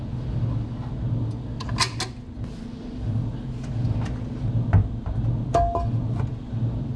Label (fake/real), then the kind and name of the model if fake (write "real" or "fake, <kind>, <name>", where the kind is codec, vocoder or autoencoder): real